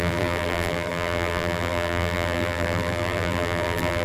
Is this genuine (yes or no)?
no